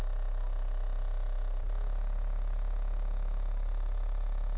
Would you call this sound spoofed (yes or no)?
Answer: no